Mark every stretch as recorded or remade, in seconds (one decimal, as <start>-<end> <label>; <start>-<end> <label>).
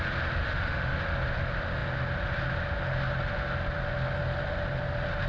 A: 0.0-0.4 recorded; 0.4-1.0 remade; 1.0-5.3 recorded